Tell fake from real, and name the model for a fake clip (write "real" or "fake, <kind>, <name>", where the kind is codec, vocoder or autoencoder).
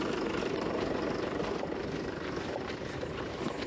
real